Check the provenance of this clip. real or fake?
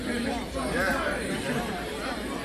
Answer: real